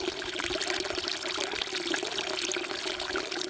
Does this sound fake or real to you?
real